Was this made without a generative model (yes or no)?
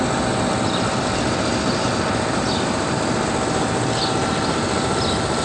yes